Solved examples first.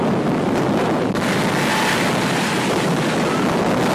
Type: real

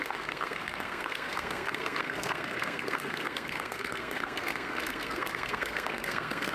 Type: fake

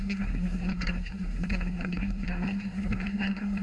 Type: fake